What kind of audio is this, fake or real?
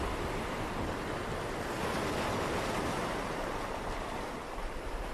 real